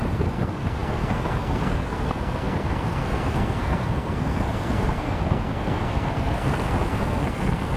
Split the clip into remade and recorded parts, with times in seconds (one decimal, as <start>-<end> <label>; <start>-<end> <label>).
0.0-7.8 remade